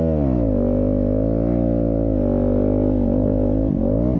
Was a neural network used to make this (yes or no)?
no